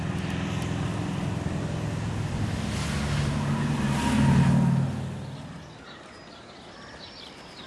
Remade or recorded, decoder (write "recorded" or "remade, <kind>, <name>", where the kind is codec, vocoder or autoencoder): recorded